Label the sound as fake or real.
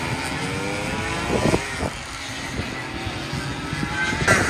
real